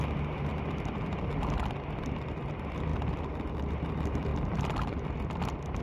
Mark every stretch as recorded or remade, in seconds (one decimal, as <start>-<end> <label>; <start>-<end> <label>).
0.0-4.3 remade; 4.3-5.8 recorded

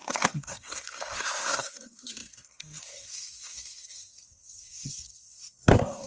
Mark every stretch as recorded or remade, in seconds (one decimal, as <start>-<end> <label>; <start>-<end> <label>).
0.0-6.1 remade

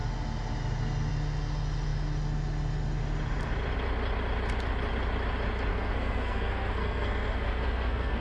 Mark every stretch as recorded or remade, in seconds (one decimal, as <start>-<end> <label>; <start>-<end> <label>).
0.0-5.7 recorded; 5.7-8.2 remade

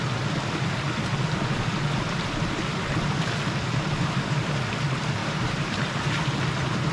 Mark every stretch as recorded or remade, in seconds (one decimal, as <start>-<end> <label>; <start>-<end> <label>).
0.0-5.2 recorded; 5.2-6.1 remade; 6.1-6.9 recorded

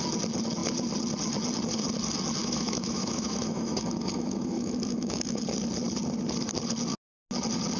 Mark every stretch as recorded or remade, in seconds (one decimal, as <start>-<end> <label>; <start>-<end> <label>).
0.0-2.4 recorded; 2.4-5.4 remade; 5.4-7.8 recorded

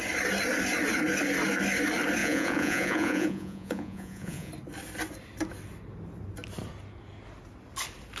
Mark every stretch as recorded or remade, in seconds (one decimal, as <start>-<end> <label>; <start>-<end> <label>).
0.0-2.2 recorded; 2.2-4.5 remade; 4.5-8.2 recorded

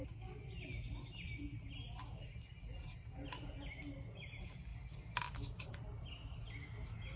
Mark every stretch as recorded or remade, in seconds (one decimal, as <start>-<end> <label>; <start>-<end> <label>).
0.0-7.2 recorded